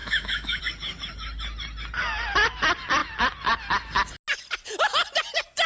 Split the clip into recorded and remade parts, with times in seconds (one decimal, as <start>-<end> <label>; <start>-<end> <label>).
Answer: 0.0-0.6 remade; 0.6-5.7 recorded